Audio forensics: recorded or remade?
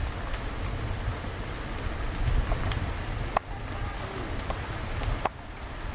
recorded